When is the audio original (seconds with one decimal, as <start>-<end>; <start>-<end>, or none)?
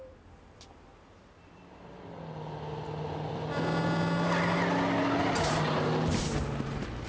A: 0.9-5.2